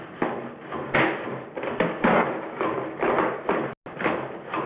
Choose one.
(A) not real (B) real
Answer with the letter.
B